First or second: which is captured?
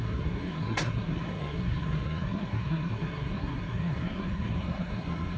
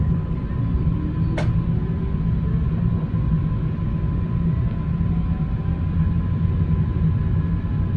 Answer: second